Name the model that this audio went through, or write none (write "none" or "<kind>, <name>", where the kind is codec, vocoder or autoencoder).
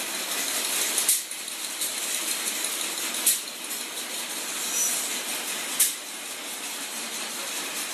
none